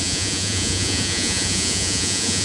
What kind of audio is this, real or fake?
fake